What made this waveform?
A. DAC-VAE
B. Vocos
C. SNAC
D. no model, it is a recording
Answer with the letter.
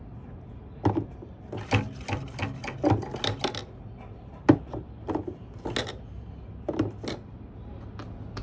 D